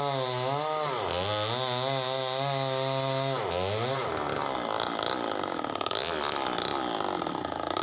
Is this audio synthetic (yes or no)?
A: no